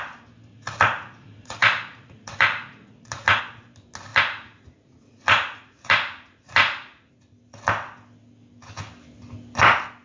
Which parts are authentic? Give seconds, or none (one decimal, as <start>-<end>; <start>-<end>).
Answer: 0.0-0.5; 3.4-4.1; 7.1-10.0